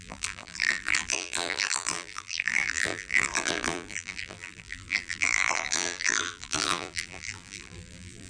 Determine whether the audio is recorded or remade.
remade